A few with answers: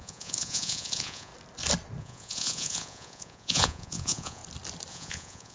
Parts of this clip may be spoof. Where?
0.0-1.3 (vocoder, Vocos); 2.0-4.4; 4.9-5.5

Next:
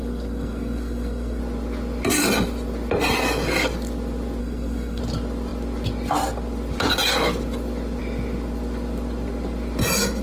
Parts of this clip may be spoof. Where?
0.0-1.4 (codec, SNAC); 4.4-5.0

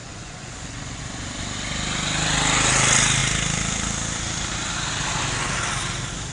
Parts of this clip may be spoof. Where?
0.0-1.0 (vocoder, Vocos)

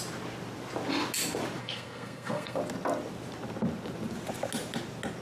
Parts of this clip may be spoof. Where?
1.6-2.6 (codec, SNAC)